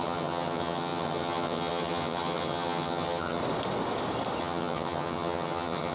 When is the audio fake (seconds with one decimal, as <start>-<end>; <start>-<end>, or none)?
0.0-3.4; 4.4-5.9